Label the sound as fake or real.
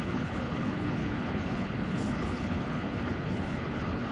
fake